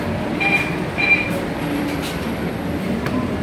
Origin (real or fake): fake